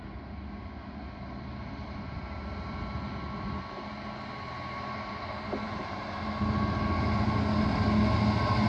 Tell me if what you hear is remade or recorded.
recorded